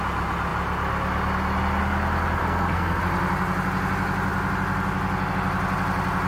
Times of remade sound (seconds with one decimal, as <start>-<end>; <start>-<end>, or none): 2.4-3.0